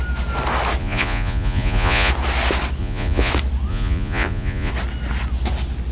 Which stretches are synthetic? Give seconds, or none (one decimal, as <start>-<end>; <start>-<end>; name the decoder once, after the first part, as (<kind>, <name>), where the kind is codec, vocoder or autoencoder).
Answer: 0.8-2.1 (vocoder, Vocos); 2.8-3.3; 3.7-4.7